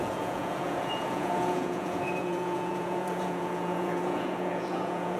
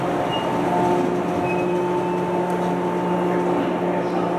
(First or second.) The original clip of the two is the second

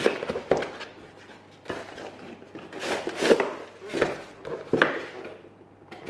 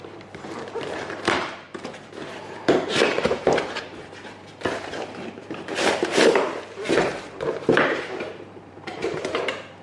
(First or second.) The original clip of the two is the first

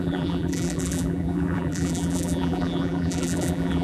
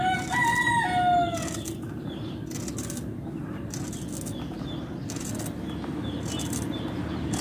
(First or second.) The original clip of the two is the second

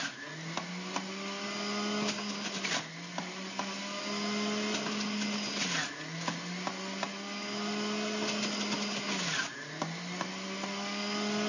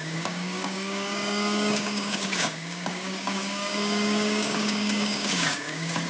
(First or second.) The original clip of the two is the first